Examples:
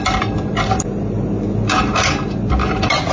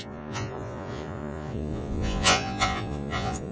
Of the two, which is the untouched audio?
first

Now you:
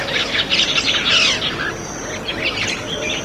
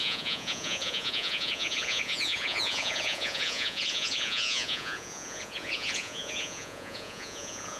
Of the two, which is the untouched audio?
first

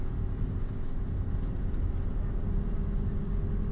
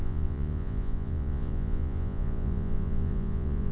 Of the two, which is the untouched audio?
first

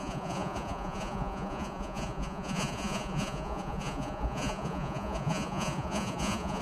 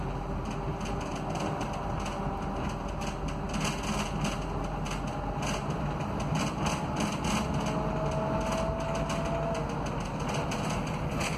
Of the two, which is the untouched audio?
second